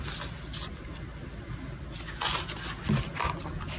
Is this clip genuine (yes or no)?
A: yes